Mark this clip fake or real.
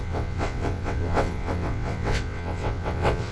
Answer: fake